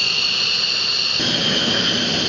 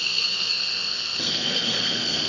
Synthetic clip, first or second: second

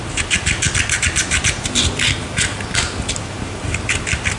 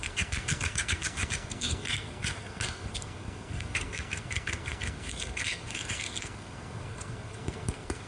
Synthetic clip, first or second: second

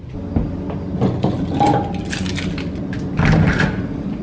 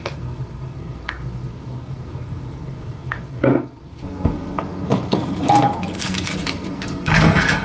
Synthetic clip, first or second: second